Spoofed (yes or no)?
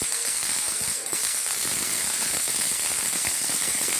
yes